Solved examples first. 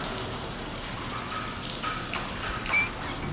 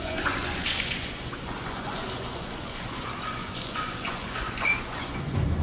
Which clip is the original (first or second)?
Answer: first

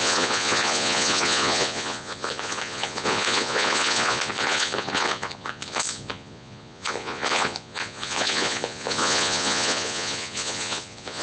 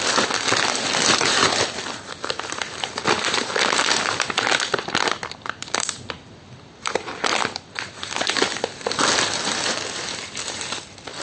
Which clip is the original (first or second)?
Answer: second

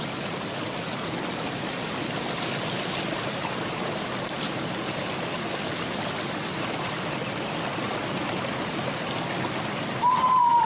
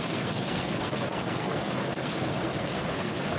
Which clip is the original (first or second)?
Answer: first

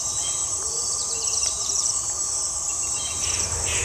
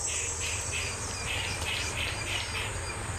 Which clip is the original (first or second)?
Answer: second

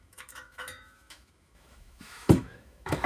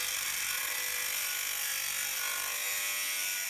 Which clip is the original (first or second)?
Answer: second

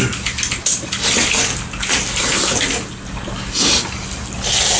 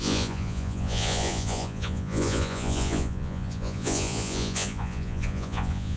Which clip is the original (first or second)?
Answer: first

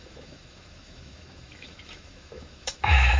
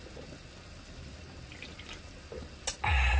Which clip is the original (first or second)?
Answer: second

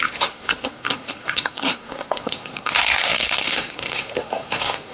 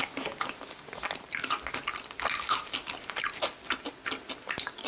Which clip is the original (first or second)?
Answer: second